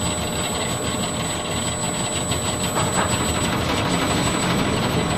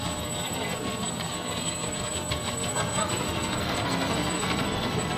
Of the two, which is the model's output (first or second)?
second